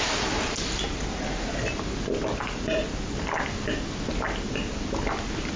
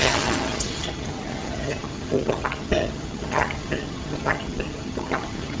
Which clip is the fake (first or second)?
second